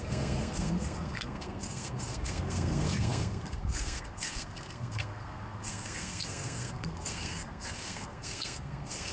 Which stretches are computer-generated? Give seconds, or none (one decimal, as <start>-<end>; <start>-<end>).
0.0-9.1